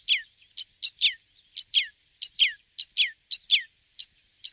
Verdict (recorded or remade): recorded